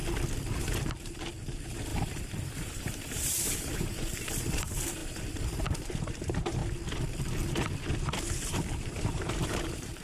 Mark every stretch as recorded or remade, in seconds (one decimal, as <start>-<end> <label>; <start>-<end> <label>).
0.0-0.6 recorded; 0.6-6.6 remade; 6.6-8.8 recorded; 8.8-10.0 remade